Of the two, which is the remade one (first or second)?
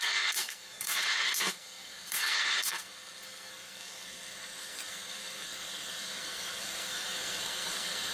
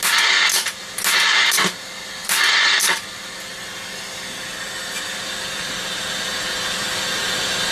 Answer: first